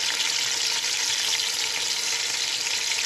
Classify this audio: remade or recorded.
recorded